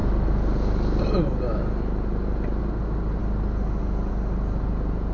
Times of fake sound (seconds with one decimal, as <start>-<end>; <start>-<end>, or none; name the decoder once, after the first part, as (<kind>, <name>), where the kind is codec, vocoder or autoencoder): none